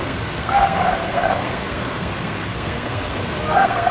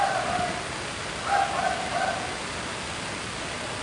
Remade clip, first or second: first